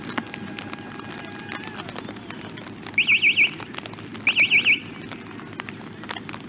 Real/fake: real